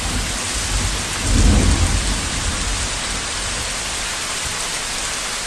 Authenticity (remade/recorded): recorded